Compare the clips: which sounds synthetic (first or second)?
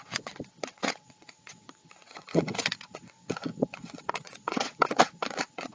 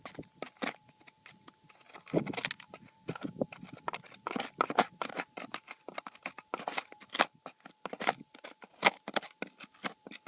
first